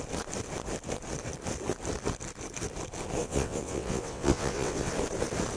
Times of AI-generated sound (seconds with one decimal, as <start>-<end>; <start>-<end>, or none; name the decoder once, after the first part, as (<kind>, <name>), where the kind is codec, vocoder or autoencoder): 3.2-4.9 (vocoder, WaveNeXt)